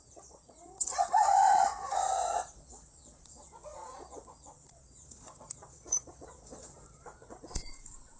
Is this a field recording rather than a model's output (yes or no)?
no